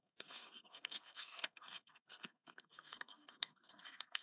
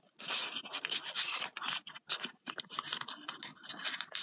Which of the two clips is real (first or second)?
second